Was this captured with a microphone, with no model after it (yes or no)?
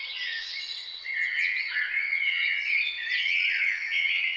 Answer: no